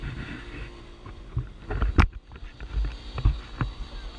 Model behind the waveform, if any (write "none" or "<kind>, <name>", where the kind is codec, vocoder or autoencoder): vocoder, BigVGAN v2